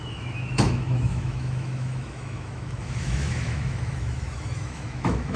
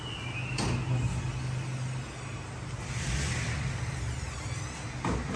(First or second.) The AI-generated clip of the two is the first